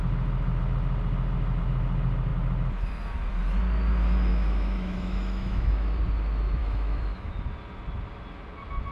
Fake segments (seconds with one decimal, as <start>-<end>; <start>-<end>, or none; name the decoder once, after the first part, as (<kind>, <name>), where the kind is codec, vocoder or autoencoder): 4.3-6.0 (autoencoder, DAC-VAE); 6.6-7.3